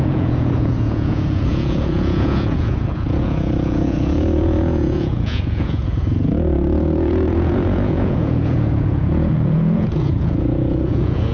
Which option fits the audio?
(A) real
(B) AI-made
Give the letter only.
B